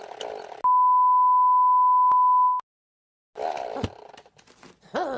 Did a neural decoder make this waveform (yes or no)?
no